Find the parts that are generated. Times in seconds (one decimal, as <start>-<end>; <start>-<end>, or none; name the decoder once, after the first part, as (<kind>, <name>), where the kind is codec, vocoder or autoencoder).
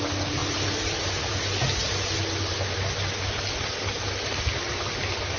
none